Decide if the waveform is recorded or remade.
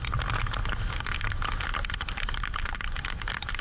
recorded